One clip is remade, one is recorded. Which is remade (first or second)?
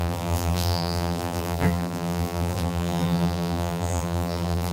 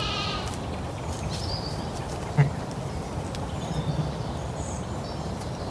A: first